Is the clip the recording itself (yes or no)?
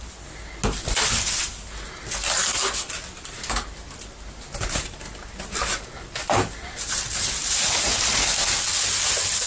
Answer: yes